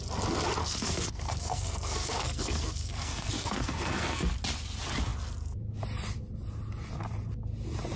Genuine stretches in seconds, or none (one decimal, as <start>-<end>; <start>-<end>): 0.0-0.6; 4.3-8.0